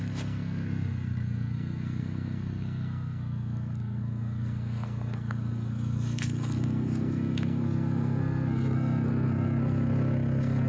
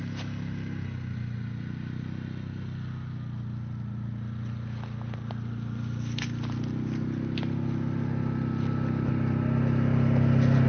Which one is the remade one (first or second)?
first